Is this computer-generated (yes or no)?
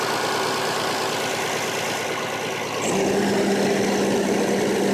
no